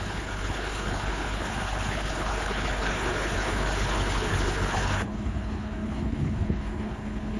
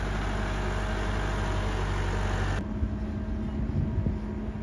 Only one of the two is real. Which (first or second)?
second